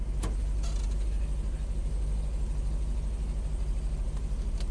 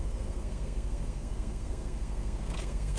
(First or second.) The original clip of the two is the first